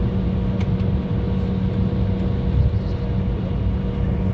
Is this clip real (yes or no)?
yes